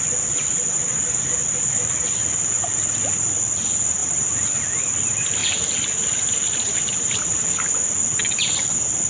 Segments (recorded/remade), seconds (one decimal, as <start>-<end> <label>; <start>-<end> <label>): 0.0-9.1 recorded

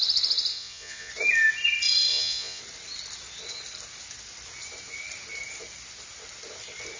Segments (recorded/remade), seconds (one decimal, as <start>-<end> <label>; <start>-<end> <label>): 0.0-0.5 recorded; 0.5-1.1 remade; 1.1-2.1 recorded; 2.1-2.6 remade; 2.6-7.0 recorded

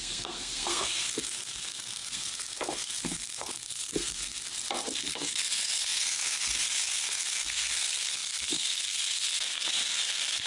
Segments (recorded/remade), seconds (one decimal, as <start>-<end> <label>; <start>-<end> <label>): 0.0-4.5 remade; 4.5-5.1 recorded; 5.1-10.5 remade

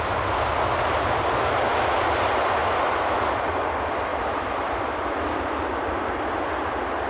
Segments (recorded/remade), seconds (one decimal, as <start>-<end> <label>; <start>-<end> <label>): 0.0-4.1 recorded; 4.1-5.6 remade; 5.6-7.1 recorded

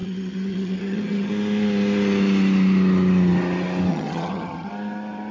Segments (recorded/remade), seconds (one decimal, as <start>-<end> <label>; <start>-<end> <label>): 0.0-1.3 remade; 1.3-3.9 recorded; 3.9-4.7 remade; 4.7-5.3 recorded

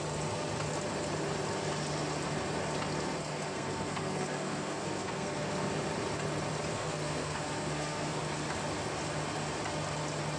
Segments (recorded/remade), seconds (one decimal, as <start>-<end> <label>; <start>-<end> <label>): 0.0-3.1 recorded; 3.1-5.5 remade; 5.5-6.7 recorded; 6.7-8.2 remade; 8.2-10.4 recorded

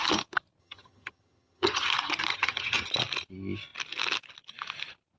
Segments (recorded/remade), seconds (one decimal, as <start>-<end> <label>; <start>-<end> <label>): 0.0-0.6 recorded; 0.6-1.9 remade; 1.9-2.3 recorded; 2.3-2.9 remade; 2.9-5.2 recorded

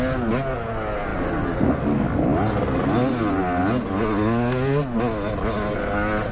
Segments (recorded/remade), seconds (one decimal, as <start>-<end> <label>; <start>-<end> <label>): 0.0-6.3 recorded